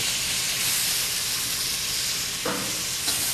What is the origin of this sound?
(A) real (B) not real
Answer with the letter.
A